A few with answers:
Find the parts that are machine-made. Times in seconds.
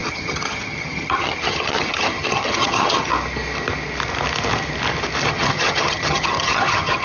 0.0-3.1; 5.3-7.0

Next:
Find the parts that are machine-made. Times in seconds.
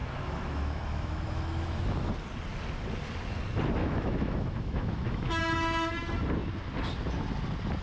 0.0-2.1; 3.8-5.4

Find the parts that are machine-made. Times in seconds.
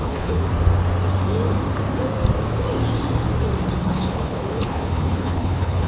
0.0-0.5; 3.8-5.9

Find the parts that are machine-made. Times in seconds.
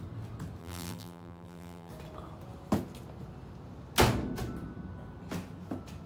0.6-1.9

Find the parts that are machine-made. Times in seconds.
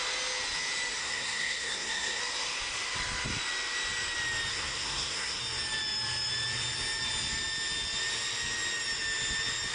1.0-2.2; 4.5-5.4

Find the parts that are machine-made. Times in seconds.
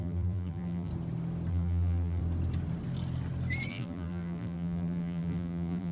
0.0-0.9; 1.5-2.2; 3.7-5.9